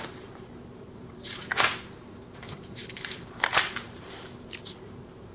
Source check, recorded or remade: remade